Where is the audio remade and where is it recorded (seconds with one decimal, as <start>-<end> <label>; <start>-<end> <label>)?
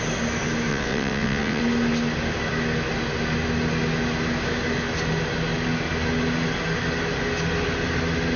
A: 0.0-0.7 recorded; 0.7-1.6 remade; 1.6-8.4 recorded